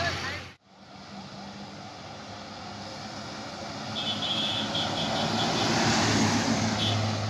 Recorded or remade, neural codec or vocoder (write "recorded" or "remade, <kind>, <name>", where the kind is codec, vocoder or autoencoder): recorded